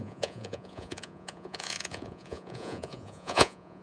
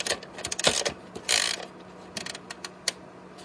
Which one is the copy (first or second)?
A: first